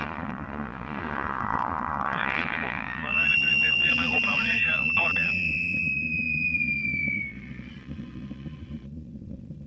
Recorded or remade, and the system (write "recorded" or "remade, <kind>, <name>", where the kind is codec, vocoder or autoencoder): remade, vocoder, Vocos